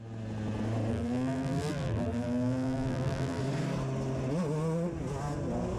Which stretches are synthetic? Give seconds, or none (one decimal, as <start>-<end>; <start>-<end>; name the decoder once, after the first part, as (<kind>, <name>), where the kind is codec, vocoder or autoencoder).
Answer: 0.9-3.4 (vocoder, BigVGAN v2)